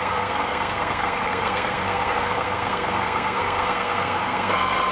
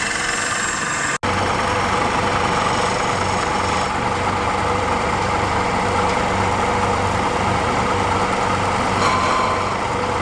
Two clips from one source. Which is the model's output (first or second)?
first